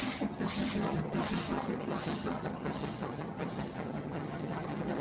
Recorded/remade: remade